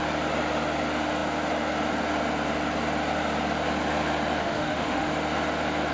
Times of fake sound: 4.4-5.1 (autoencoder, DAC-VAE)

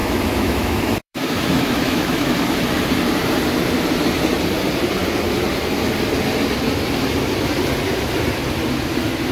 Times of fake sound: 0.0-2.3 (autoencoder, DAC-VAE)

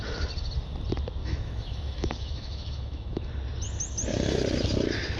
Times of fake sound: 1.2-3.3 (autoencoder, DAC-VAE)

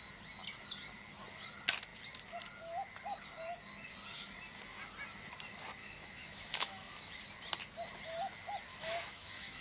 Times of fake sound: 5.8-7.1 (autoencoder, DAC-VAE); 8.7-9.6

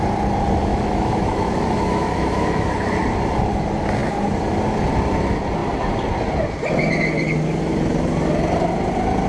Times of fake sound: 0.7-3.0 (autoencoder, DAC-VAE)

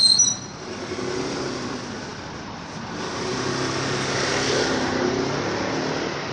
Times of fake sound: none

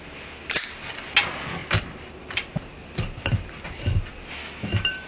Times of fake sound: 4.4-5.1 (autoencoder, DAC-VAE)

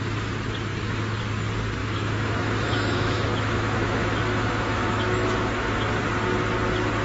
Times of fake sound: 1.8-6.0 (autoencoder, DAC-VAE)